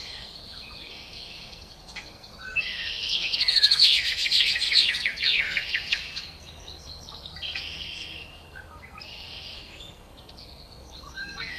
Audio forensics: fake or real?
fake